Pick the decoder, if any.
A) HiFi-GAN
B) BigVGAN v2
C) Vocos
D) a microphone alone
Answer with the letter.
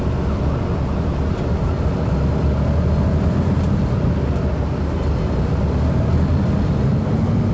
D